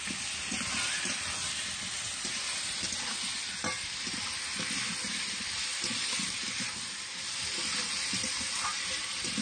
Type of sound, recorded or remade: recorded